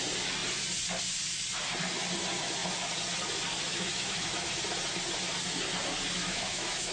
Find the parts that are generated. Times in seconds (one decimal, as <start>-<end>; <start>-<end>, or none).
3.7-4.5; 6.2-6.9